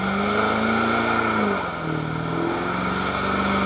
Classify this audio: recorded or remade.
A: recorded